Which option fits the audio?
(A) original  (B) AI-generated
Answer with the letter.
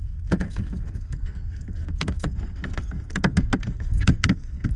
B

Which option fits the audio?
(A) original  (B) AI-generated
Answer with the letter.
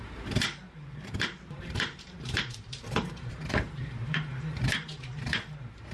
B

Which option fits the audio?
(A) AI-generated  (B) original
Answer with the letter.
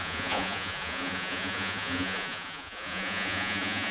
A